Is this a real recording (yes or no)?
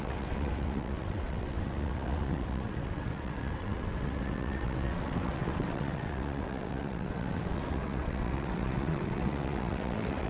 no